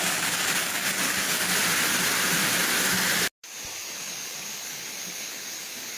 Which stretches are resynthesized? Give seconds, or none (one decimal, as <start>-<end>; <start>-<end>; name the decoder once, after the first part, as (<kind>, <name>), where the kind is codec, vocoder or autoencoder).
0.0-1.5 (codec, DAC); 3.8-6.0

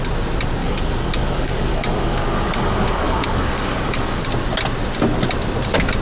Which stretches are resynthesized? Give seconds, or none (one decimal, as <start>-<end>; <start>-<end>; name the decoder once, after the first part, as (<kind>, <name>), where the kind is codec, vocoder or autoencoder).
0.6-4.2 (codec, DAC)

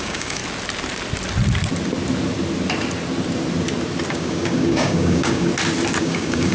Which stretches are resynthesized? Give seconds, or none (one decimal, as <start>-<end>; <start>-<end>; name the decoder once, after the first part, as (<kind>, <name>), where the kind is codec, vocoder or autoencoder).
0.0-0.4 (codec, DAC); 4.1-5.5; 6.0-6.5